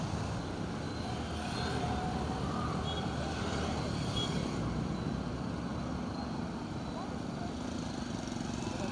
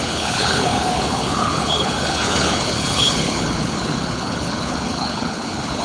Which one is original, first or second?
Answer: first